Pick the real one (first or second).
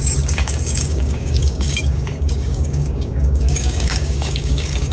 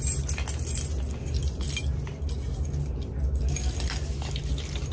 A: second